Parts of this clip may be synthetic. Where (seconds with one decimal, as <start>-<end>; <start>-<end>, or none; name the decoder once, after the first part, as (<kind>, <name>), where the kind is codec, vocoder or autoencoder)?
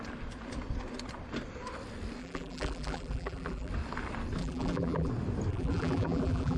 2.2-3.7 (vocoder, BigVGAN v2); 4.4-5.1; 5.5-6.6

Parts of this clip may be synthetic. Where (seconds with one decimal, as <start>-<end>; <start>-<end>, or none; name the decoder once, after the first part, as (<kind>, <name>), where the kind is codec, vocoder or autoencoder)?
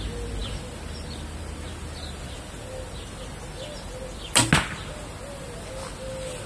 none